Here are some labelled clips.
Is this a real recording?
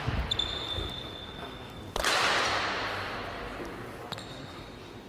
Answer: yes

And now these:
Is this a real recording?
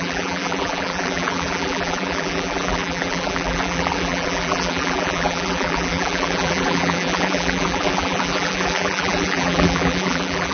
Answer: no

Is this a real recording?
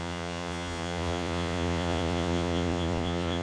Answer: no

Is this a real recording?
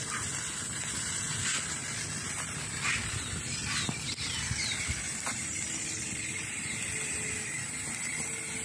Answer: yes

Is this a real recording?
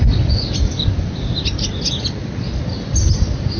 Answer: yes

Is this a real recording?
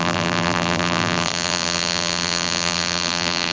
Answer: no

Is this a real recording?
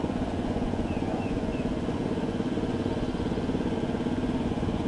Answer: no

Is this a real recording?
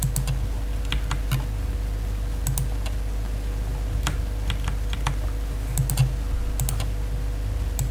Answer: yes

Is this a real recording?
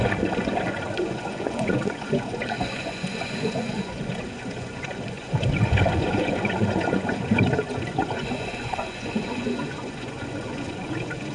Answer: no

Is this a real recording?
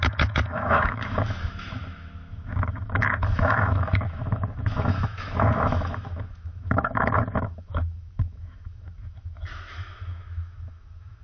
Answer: no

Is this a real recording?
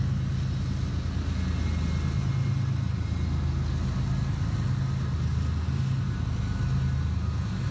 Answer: yes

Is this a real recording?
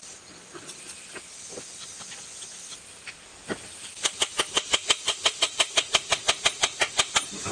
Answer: yes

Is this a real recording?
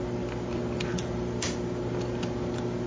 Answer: yes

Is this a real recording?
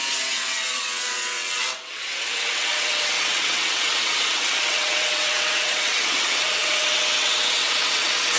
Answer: no